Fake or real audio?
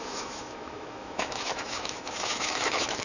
fake